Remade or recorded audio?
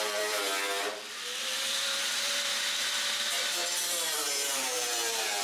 remade